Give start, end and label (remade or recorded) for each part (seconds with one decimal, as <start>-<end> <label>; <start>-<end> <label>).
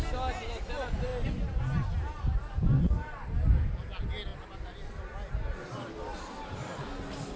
0.0-7.4 recorded